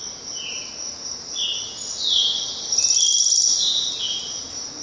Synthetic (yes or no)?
no